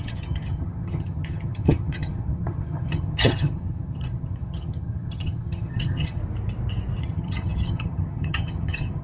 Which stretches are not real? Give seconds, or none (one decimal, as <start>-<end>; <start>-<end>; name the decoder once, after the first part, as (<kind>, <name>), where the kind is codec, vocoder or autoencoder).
0.0-6.2 (vocoder, HiFi-GAN); 7.0-9.0